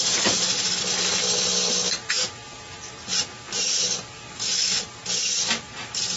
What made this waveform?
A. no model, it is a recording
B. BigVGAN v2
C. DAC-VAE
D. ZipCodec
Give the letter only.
A